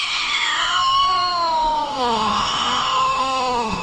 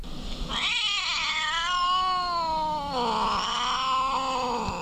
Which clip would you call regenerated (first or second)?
first